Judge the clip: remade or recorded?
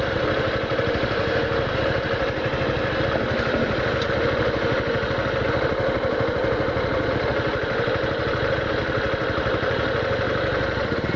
recorded